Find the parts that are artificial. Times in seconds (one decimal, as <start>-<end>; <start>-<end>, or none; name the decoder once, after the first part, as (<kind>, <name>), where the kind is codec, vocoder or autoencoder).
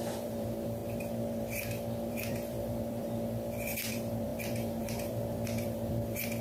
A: 0.0-0.8 (vocoder, BigVGAN v2); 1.4-6.4